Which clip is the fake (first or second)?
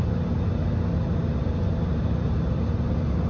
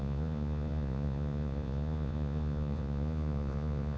second